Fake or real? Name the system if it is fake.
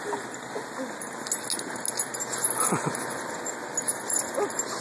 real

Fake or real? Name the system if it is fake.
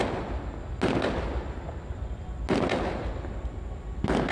real